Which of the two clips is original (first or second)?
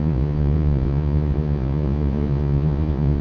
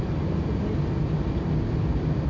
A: second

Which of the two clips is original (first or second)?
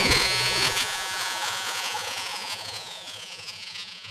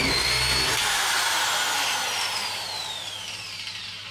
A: second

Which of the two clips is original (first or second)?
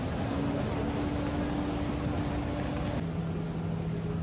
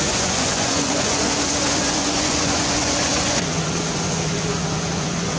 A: first